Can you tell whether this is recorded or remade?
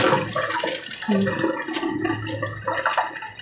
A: recorded